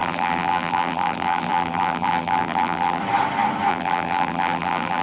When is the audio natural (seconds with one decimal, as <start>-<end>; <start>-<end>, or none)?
3.0-3.7

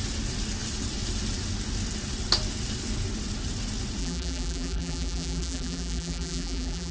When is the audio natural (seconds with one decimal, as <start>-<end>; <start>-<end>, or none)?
0.0-4.0